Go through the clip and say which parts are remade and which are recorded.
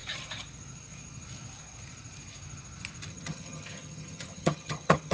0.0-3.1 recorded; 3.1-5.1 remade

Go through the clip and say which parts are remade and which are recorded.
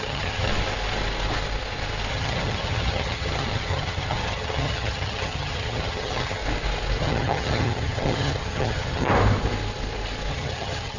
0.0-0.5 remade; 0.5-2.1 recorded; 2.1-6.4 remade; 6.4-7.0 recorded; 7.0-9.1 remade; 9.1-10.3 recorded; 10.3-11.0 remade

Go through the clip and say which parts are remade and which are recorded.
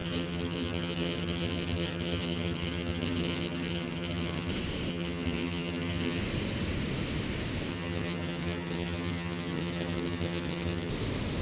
0.0-4.5 remade; 4.5-4.9 recorded; 4.9-6.2 remade; 6.2-7.7 recorded; 7.7-10.9 remade; 10.9-11.4 recorded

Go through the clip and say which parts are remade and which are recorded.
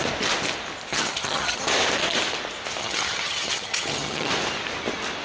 0.0-0.9 recorded; 0.9-1.6 remade; 1.6-2.8 recorded; 2.8-4.3 remade; 4.3-5.2 recorded